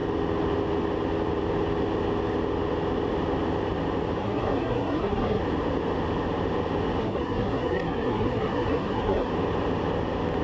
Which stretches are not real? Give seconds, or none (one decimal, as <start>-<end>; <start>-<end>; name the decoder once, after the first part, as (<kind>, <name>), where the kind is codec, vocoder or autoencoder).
4.2-5.4 (codec, SNAC); 7.0-9.3